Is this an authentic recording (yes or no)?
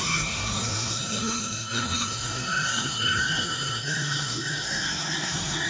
no